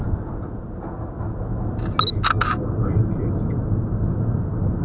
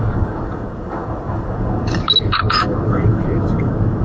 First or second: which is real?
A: first